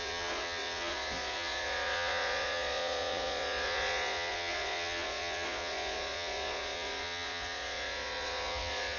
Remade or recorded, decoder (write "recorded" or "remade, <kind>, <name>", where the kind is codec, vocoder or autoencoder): remade, vocoder, Vocos